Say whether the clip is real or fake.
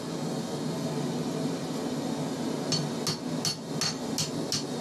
real